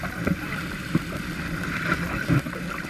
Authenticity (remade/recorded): recorded